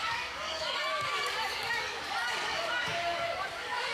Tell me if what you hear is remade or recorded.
remade